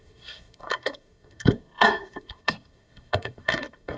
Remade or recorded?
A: remade